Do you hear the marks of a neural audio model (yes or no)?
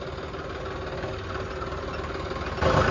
no